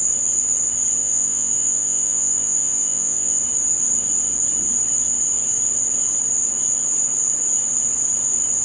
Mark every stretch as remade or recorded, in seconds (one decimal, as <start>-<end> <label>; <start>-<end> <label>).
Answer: 0.0-1.0 recorded; 1.0-3.4 remade; 3.4-8.6 recorded